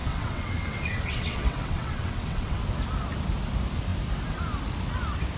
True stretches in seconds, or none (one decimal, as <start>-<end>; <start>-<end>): 2.6-5.4